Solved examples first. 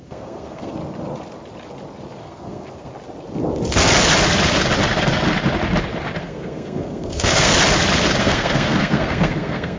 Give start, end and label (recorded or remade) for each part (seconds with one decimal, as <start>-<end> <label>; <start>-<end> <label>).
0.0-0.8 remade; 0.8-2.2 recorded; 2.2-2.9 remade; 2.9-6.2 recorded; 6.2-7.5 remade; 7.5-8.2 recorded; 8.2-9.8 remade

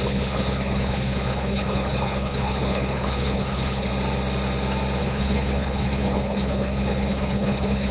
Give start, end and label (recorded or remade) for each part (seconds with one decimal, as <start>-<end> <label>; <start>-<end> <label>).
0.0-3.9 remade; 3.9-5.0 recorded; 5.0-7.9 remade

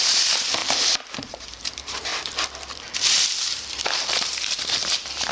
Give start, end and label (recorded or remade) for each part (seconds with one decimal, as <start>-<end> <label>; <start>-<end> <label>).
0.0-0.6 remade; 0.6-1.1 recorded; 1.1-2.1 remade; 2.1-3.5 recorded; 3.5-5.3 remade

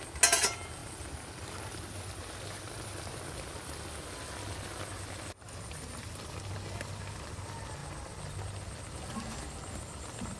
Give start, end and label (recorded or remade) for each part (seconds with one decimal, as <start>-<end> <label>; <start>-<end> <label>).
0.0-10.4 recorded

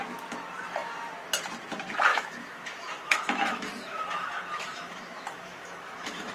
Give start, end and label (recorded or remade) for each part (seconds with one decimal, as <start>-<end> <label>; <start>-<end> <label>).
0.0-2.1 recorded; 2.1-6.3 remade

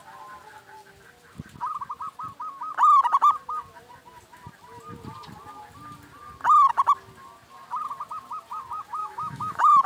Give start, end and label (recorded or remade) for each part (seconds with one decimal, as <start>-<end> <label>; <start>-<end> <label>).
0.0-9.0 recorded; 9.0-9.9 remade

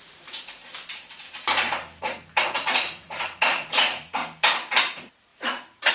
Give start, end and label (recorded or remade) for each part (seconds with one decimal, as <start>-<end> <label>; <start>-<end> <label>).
0.0-0.6 remade; 0.6-2.0 recorded; 2.0-4.2 remade; 4.2-4.8 recorded; 4.8-5.9 remade